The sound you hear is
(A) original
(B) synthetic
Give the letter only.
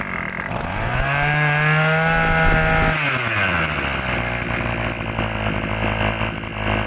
A